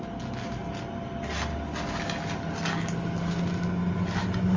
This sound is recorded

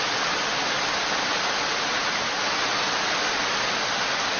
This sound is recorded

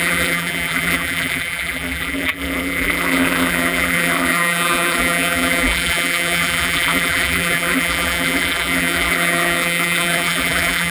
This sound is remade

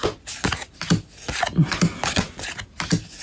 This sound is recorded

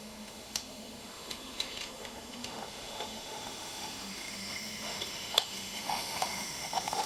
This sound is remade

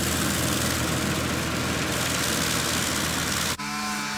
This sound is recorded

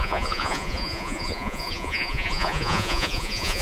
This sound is remade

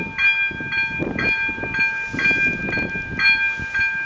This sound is recorded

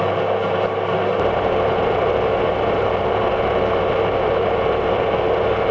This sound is recorded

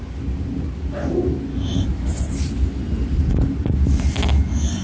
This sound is recorded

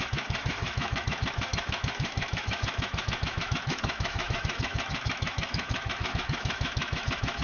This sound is remade